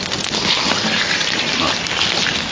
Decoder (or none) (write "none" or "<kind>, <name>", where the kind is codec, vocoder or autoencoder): none